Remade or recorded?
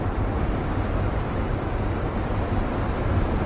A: recorded